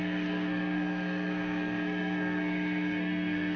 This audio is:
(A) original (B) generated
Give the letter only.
B